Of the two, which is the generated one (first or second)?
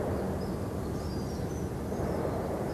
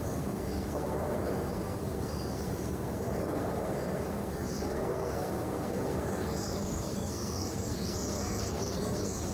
second